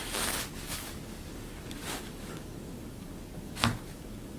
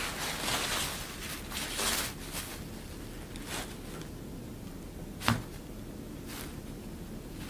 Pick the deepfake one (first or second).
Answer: first